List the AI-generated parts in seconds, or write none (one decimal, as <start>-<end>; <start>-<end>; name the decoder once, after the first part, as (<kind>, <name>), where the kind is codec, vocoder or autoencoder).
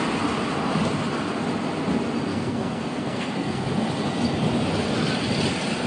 2.3-3.7 (codec, SNAC)